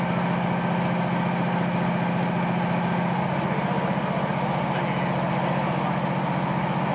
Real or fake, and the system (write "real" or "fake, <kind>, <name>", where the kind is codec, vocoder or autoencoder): real